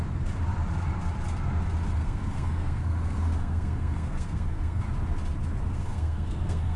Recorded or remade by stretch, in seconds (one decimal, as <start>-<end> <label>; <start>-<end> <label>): 0.0-2.0 recorded; 2.0-4.8 remade; 4.8-5.7 recorded; 5.7-6.8 remade